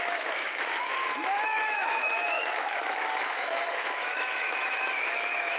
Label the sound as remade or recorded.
remade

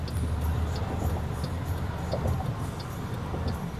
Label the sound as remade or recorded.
recorded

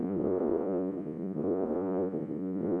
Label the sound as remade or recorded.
remade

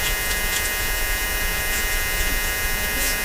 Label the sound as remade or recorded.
remade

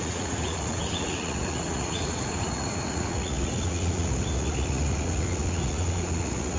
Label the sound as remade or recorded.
remade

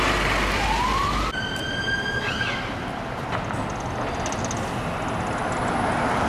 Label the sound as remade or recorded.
recorded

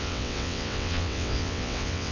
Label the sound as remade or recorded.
remade